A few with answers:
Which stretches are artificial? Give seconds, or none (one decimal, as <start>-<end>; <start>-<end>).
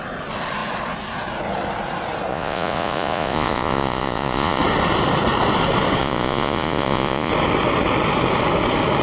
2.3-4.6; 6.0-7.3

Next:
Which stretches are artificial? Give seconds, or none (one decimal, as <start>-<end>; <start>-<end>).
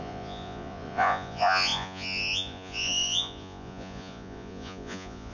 0.0-5.3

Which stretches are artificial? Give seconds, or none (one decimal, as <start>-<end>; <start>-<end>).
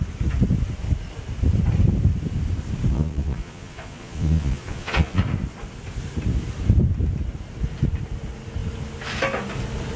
2.9-5.2